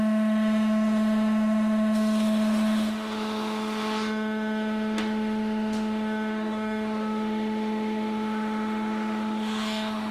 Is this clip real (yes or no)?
no